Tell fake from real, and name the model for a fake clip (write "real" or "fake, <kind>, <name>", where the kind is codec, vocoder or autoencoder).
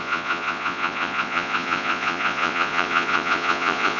fake, vocoder, Vocos